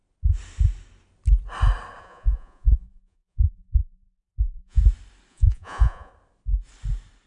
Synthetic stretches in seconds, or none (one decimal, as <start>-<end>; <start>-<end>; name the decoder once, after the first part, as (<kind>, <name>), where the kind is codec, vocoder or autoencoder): 2.0-4.8 (vocoder, Vocos); 5.3-6.1